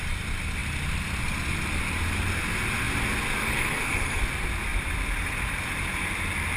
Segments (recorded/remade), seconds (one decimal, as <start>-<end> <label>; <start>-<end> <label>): 0.0-3.4 recorded; 3.4-4.2 remade; 4.2-6.6 recorded